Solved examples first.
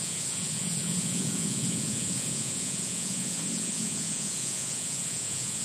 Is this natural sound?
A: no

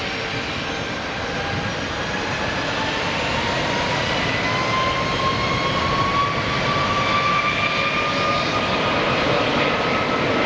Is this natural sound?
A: yes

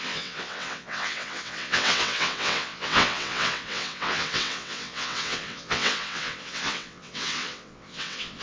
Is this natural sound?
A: no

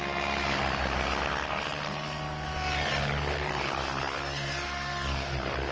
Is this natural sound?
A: yes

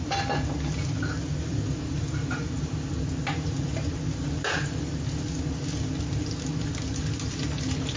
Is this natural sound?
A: yes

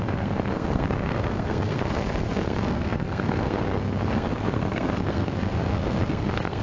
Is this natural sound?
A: no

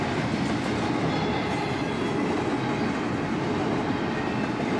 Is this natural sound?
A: yes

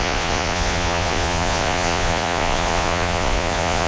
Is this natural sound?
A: no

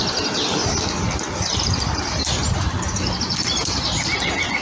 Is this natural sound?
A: no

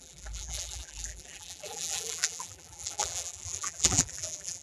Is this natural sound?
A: no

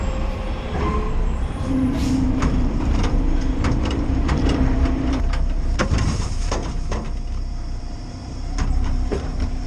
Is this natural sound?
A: no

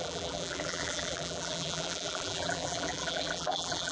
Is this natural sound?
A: no